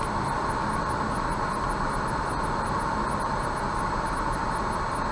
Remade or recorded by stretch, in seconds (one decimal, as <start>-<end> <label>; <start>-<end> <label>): 0.0-5.1 recorded